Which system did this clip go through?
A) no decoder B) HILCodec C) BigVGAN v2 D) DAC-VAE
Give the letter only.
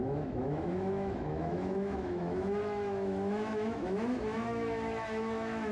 D